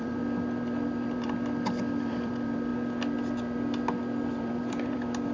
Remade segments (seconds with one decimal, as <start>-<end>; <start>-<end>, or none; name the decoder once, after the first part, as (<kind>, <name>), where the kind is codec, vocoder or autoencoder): 0.0-2.7 (vocoder, BigVGAN v2); 4.3-5.3